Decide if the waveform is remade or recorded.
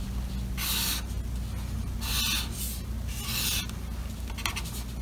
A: recorded